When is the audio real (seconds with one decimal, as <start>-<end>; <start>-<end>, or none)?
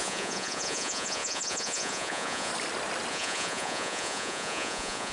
2.5-3.1